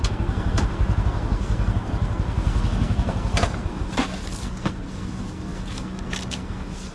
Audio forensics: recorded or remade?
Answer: remade